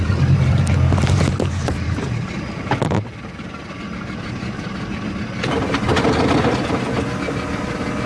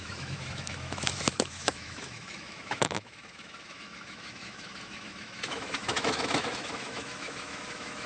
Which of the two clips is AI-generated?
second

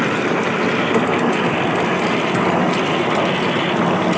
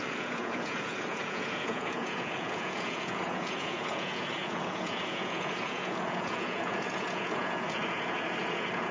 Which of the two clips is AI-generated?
second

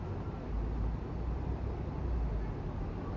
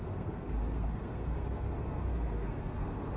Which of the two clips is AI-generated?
second